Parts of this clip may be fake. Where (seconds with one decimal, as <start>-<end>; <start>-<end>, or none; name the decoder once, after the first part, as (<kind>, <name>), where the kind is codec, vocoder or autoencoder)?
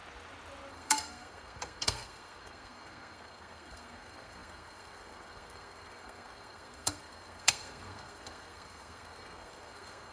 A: 0.7-10.1 (codec, SNAC)